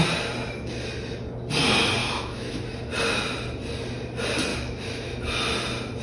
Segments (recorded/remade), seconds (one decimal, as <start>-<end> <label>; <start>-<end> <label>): 0.0-2.0 recorded; 2.0-2.6 remade; 2.6-4.5 recorded; 4.5-5.1 remade; 5.1-6.0 recorded